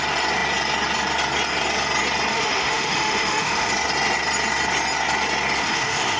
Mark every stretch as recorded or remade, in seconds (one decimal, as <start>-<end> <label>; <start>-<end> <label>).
0.0-2.3 recorded; 2.3-3.7 remade; 3.7-5.6 recorded; 5.6-6.2 remade